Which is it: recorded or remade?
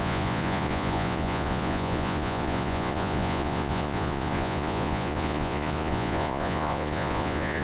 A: remade